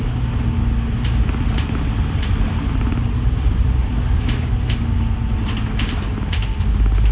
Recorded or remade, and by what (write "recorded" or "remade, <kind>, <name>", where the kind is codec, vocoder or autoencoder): recorded